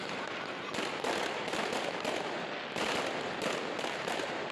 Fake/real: real